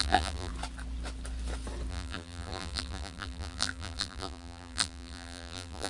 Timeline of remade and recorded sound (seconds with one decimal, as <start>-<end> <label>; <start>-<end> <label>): 0.0-0.5 remade; 0.5-1.9 recorded; 1.9-5.9 remade